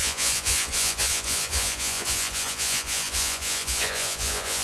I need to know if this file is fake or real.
fake